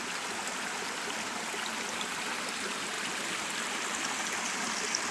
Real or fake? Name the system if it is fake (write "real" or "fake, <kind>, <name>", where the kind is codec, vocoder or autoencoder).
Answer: real